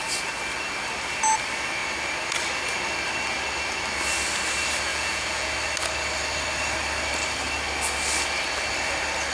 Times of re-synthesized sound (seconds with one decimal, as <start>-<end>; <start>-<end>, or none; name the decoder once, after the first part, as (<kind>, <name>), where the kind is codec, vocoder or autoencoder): 4.9-5.5 (vocoder, Vocos)